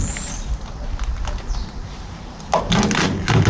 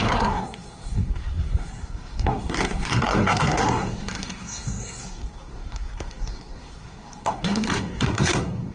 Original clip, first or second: first